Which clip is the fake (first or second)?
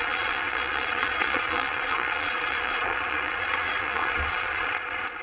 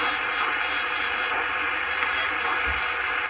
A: first